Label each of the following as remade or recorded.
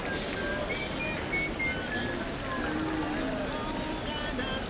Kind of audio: recorded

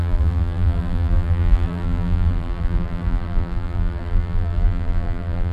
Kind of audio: remade